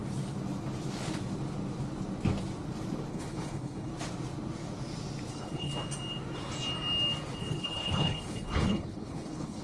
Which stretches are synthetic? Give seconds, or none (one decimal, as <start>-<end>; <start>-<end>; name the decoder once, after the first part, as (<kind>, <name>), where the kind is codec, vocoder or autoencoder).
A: 3.1-3.9 (codec, HILCodec); 5.3-5.7; 7.4-9.6